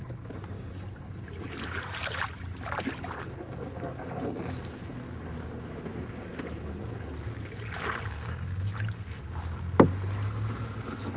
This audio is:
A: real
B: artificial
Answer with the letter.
A